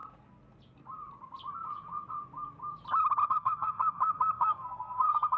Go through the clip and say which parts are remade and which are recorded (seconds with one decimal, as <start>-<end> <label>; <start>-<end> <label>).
0.0-3.2 recorded; 3.2-5.4 remade